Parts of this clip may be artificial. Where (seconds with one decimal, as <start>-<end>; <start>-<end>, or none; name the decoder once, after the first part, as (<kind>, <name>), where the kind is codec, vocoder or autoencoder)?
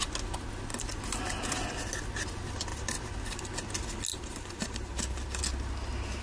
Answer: 0.7-1.8 (vocoder, BigVGAN v2); 2.7-3.4; 4.1-5.4